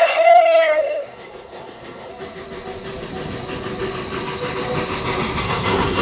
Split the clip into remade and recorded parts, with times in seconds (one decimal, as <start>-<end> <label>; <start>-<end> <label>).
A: 0.0-2.1 remade; 2.1-5.4 recorded; 5.4-6.0 remade